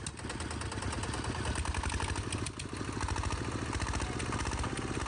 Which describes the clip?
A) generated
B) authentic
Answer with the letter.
B